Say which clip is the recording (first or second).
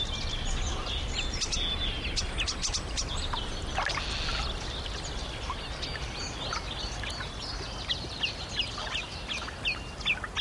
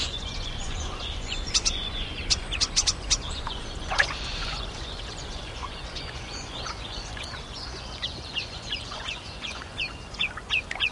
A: first